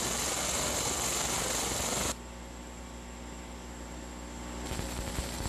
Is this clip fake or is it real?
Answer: real